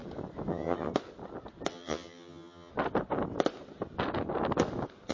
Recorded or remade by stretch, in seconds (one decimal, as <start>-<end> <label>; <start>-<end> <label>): 0.0-0.5 recorded; 0.5-0.9 remade; 0.9-1.7 recorded; 1.7-2.7 remade; 2.7-5.1 recorded